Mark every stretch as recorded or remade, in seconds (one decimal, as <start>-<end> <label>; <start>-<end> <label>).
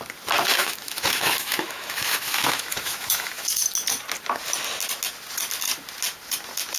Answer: 0.0-0.5 recorded; 0.5-3.5 remade; 3.5-6.8 recorded